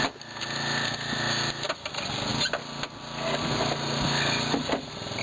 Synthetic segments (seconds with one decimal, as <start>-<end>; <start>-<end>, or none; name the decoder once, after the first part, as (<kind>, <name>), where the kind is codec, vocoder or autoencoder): none